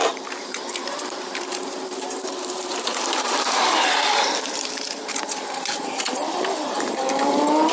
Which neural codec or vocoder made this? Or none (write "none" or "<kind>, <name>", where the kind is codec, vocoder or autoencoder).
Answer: vocoder, BigVGAN v2